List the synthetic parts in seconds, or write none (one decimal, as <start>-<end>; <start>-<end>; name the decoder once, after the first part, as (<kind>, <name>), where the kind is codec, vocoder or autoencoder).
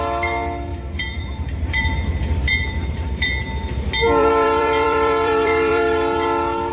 0.7-3.4 (vocoder, BigVGAN v2); 4.2-6.7